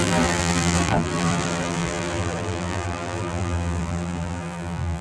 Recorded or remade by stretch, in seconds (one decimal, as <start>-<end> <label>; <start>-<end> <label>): 0.0-5.0 remade